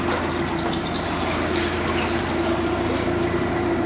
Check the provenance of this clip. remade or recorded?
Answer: recorded